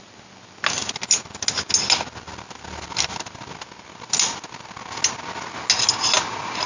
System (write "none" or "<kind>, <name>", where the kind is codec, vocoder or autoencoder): none